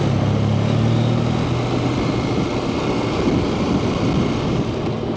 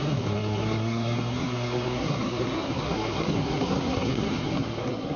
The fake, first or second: second